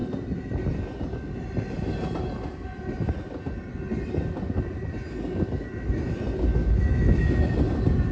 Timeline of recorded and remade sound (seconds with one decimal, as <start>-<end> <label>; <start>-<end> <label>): 0.0-6.6 recorded; 6.6-7.5 remade; 7.5-8.1 recorded